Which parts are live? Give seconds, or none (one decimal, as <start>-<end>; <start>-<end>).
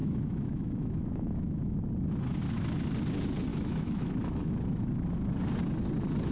1.8-3.5; 4.5-6.3